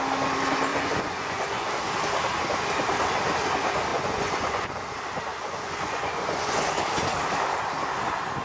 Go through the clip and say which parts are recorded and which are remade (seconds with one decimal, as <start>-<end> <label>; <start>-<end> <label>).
0.0-0.7 recorded; 0.7-1.7 remade; 1.7-3.9 recorded; 3.9-4.7 remade; 4.7-5.3 recorded; 5.3-6.7 remade; 6.7-8.4 recorded